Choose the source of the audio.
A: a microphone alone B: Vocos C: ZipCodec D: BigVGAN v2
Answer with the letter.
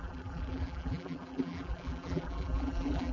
D